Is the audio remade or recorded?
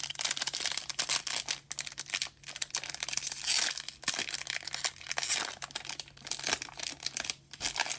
recorded